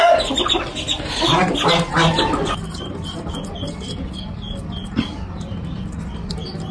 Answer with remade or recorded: recorded